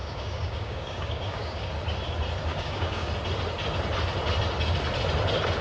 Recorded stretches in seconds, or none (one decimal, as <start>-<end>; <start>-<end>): 1.7-2.5; 3.1-5.6